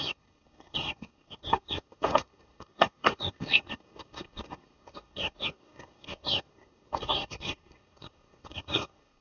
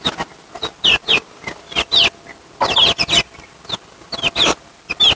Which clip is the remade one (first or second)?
first